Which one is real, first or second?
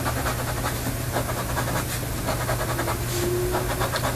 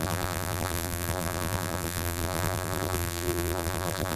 first